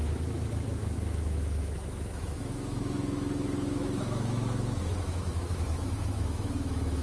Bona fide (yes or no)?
no